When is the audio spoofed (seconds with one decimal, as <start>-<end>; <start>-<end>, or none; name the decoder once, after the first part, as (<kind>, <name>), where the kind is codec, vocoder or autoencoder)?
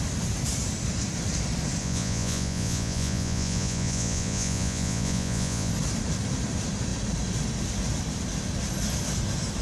1.8-5.7 (vocoder, Vocos)